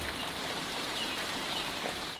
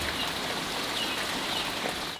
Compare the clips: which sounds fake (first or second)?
first